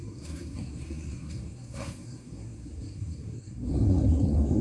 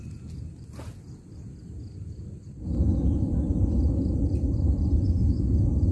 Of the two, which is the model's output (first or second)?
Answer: first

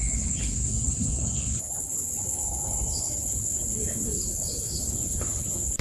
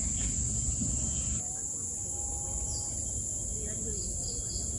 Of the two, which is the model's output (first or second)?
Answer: first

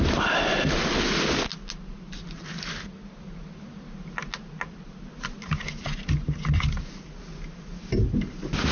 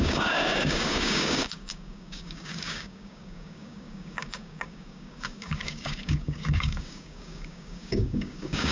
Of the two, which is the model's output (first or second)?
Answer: second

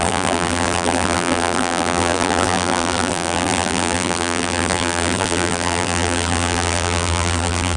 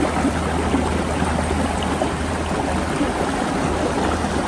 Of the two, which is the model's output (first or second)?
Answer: first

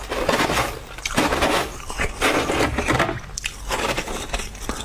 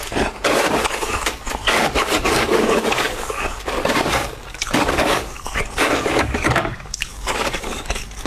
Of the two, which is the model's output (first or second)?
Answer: second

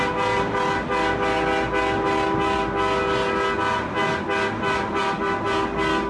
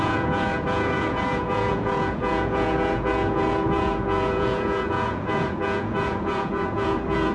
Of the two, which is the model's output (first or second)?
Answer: second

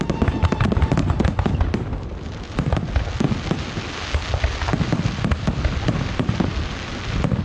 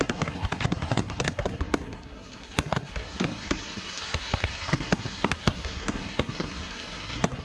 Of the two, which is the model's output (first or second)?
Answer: second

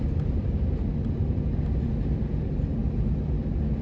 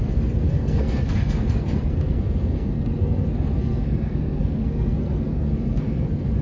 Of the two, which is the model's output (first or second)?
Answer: second